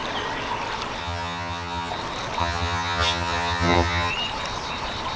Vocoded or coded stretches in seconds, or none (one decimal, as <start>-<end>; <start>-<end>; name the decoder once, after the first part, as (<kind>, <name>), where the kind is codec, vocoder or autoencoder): 1.0-1.9 (vocoder, HiFi-GAN); 2.4-4.1